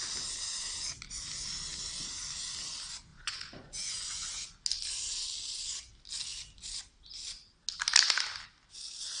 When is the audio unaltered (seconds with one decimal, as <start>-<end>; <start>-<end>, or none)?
0.0-3.1; 4.5-9.2